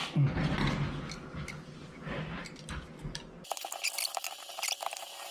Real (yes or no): yes